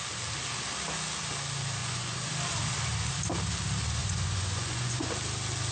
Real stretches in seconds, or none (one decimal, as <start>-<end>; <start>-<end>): 0.0-1.8; 2.3-4.0; 5.1-5.7